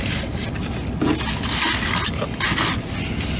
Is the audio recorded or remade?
recorded